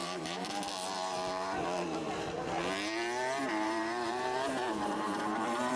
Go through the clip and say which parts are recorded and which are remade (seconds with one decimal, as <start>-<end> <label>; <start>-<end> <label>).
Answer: 0.0-1.6 remade; 1.6-3.5 recorded; 3.5-5.8 remade